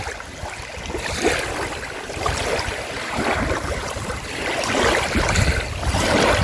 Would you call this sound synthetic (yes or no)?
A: no